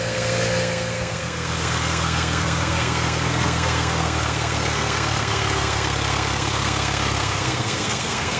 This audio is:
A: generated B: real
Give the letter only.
A